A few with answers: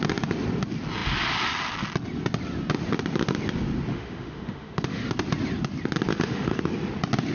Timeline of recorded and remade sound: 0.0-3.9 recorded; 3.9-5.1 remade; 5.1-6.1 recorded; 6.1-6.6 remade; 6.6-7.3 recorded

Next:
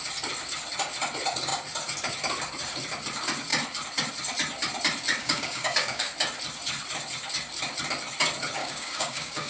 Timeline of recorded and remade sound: 0.0-5.2 recorded; 5.2-6.1 remade; 6.1-8.6 recorded; 8.6-9.5 remade

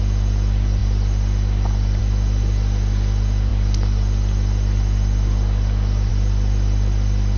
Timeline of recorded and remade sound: 0.0-7.4 recorded

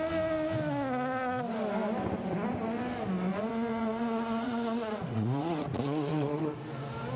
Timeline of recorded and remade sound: 0.0-3.3 recorded; 3.3-6.4 remade; 6.4-7.2 recorded

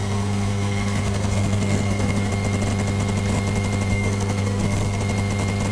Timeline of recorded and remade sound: 0.0-2.3 remade; 2.3-3.9 recorded; 3.9-5.0 remade; 5.0-5.7 recorded

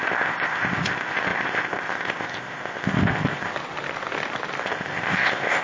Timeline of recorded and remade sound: 0.0-3.5 remade; 3.5-4.6 recorded; 4.6-5.6 remade

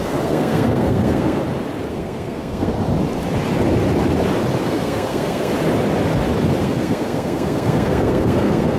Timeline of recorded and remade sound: 0.0-1.4 remade; 1.4-1.9 recorded; 1.9-2.7 remade; 2.7-4.6 recorded; 4.6-5.5 remade; 5.5-6.6 recorded; 6.6-8.8 remade